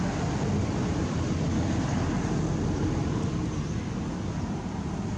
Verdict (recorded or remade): recorded